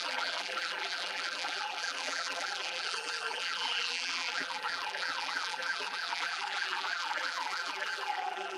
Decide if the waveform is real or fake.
fake